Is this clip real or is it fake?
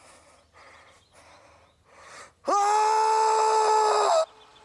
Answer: real